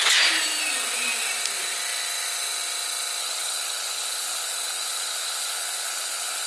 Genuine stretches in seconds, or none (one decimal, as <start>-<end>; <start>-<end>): 0.0-3.2